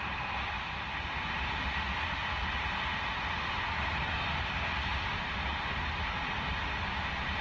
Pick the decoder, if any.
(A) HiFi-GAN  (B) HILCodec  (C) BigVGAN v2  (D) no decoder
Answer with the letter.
C